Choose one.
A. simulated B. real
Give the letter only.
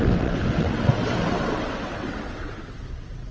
A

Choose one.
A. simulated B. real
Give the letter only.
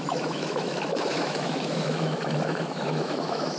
A